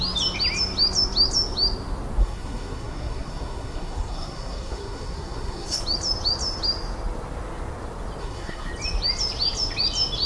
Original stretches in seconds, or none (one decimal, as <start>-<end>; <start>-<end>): 0.0-2.2; 5.8-8.2; 8.7-10.3